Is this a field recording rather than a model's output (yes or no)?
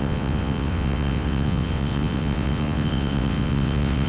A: no